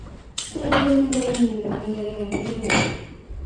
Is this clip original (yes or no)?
no